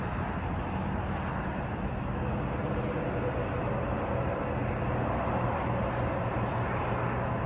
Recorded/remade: recorded